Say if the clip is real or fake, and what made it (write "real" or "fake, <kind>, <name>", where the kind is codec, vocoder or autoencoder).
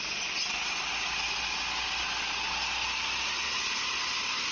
real